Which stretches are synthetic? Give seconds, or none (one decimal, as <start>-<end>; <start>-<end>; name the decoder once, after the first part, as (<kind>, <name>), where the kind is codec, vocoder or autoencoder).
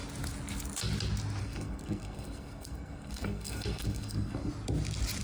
1.4-4.5 (codec, SNAC)